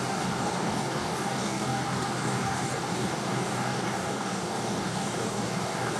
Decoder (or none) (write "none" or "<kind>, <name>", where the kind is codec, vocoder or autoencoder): codec, DAC